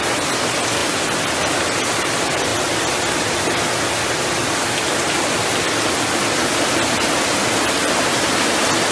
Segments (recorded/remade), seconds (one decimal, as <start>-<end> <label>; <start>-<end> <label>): 0.0-8.9 recorded